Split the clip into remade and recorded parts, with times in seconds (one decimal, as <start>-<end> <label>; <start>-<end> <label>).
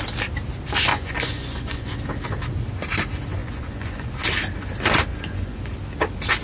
0.0-0.9 recorded; 0.9-2.0 remade; 2.0-3.4 recorded; 3.4-4.1 remade; 4.1-5.1 recorded; 5.1-5.7 remade; 5.7-6.4 recorded